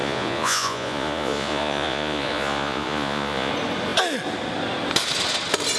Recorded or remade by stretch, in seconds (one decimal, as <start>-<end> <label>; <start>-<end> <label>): 0.0-3.5 remade; 3.5-5.8 recorded